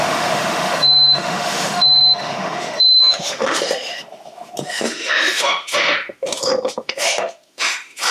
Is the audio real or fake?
fake